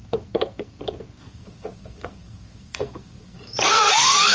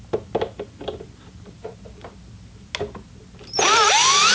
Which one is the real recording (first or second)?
second